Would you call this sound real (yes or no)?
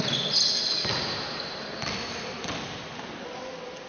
yes